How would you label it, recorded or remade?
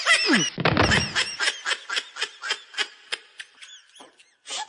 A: recorded